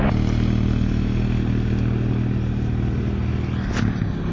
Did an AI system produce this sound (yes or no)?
no